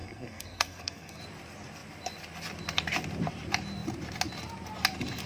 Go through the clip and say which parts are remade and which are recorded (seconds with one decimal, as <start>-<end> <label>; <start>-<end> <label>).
0.0-1.2 remade; 1.2-5.3 recorded